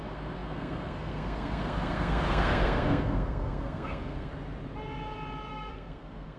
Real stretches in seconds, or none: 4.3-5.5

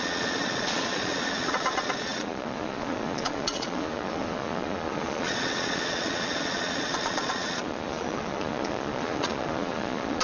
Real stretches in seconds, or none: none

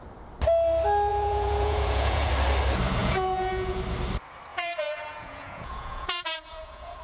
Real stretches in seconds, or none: 0.0-1.1; 2.3-3.0; 3.8-4.5

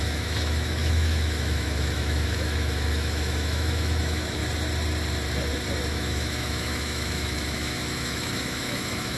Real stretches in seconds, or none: 4.4-5.9

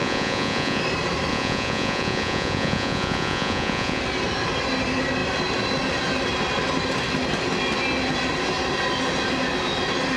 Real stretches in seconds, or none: 0.8-1.3; 4.0-10.2